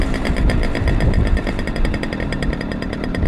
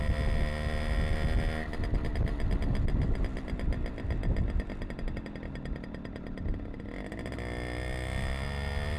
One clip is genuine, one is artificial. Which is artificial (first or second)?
first